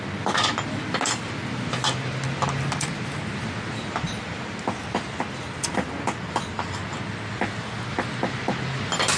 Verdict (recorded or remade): recorded